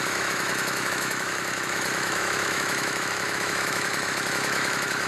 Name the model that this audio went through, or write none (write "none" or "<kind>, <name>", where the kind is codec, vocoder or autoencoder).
autoencoder, DAC-VAE